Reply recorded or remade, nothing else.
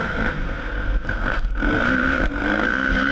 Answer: remade